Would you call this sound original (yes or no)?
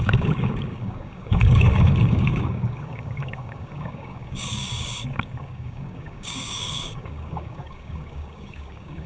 no